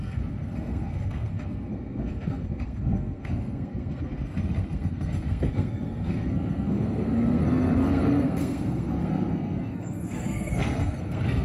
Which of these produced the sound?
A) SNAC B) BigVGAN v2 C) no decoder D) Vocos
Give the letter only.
A